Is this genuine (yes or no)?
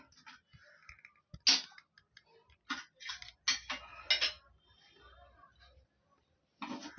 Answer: yes